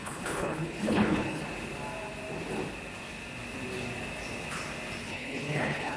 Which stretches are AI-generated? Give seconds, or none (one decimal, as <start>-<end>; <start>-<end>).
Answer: 0.0-1.4; 5.0-6.0